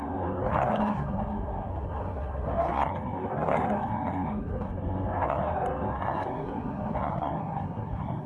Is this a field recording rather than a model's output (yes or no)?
no